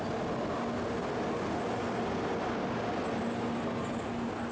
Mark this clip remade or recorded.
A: recorded